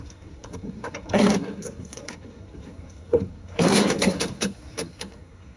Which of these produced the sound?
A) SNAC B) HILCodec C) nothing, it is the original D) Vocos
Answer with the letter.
A